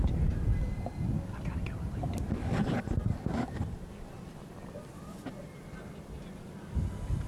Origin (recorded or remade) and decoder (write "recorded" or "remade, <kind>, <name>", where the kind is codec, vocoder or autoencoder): recorded